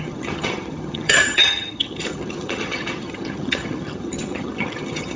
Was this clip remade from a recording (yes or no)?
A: yes